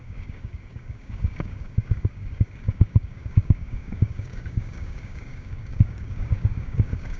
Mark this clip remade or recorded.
remade